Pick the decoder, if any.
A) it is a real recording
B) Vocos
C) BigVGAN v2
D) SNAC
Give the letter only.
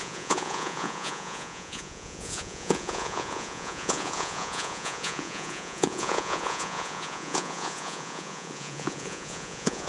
B